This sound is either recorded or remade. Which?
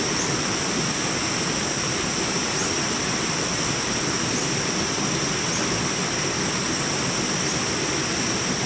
recorded